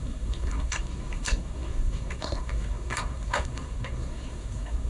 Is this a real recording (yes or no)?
no